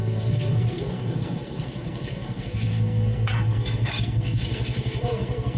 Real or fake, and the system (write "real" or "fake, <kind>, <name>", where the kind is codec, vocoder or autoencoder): fake, codec, SNAC